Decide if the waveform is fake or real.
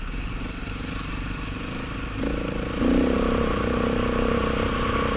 real